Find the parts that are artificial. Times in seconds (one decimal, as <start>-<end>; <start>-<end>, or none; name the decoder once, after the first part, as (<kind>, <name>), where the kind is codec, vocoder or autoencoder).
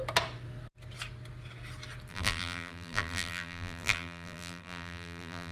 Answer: 2.1-5.5 (vocoder, BigVGAN v2)